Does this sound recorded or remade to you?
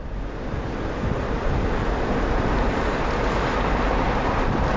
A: recorded